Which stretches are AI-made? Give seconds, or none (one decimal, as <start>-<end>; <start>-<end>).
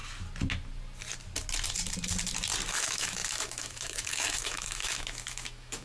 2.7-5.8